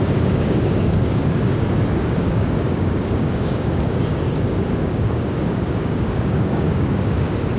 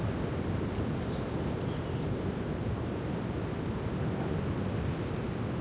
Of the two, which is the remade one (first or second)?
first